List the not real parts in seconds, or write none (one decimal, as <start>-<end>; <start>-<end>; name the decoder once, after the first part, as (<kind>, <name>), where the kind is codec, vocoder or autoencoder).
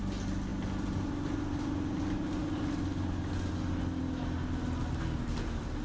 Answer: none